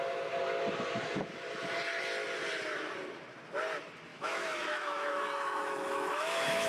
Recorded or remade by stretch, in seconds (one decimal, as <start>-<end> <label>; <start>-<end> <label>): 0.0-4.1 recorded; 4.1-6.7 remade